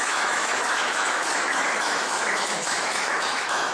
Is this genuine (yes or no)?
no